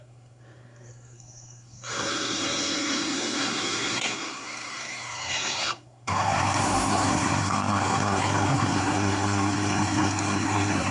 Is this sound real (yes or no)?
no